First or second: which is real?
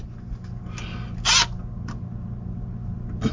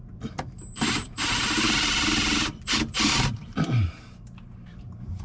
first